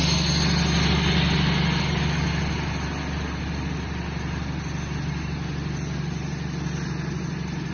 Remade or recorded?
recorded